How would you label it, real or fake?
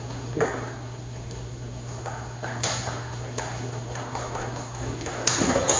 fake